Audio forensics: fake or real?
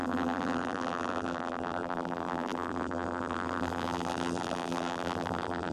fake